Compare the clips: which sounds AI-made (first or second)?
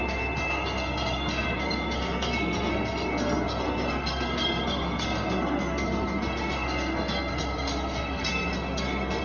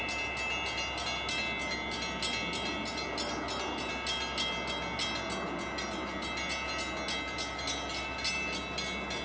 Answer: first